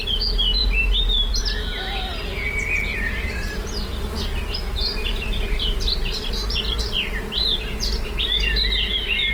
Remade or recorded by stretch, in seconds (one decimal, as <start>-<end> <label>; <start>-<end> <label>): 0.0-0.6 recorded; 0.6-1.3 remade; 1.3-2.9 recorded; 2.9-3.7 remade; 3.7-5.0 recorded; 5.0-6.8 remade; 6.8-9.3 recorded